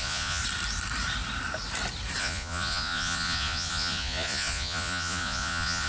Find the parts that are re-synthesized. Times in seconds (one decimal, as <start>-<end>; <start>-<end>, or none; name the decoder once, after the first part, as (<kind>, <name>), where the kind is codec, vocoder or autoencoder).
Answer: 0.0-0.4 (vocoder, Vocos); 2.2-5.9